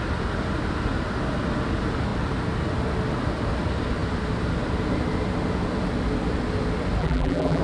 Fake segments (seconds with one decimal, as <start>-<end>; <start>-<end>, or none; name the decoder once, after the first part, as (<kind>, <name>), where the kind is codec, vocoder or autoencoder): 7.0-7.6 (vocoder, BigVGAN v2)